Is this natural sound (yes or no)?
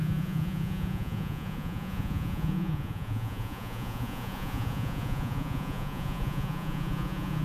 no